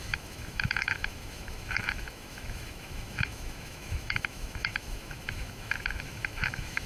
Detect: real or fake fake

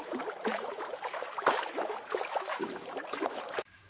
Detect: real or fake fake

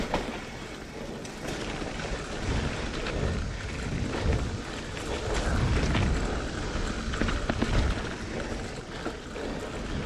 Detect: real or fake real